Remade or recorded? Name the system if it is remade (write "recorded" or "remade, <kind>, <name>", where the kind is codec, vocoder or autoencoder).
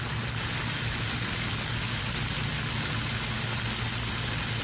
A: recorded